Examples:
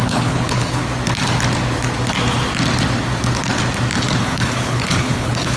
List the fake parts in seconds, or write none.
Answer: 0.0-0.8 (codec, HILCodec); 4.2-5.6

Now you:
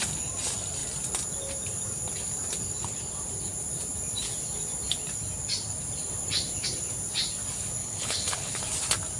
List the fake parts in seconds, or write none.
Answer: 7.8-8.6 (codec, HILCodec)

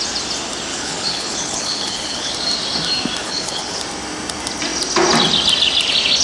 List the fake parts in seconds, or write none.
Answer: 0.7-2.3 (codec, HILCodec); 3.2-3.8

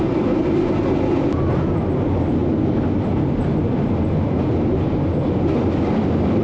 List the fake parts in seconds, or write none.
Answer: none